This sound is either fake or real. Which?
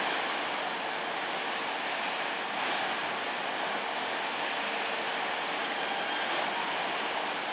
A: real